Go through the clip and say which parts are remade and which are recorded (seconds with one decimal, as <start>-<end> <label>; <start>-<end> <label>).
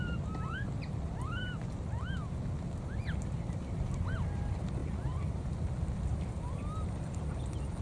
0.0-7.8 recorded